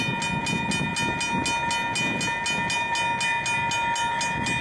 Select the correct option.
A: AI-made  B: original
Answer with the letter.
B